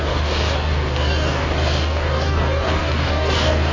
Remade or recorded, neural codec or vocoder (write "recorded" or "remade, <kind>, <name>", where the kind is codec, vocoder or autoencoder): remade, codec, DAC